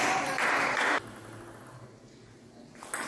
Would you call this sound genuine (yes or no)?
yes